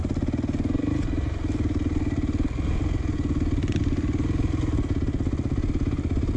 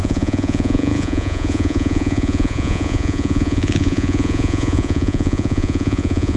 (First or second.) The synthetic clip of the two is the second